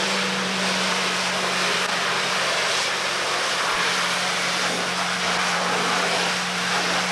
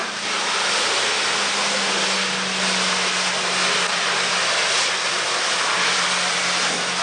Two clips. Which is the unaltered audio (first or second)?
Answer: second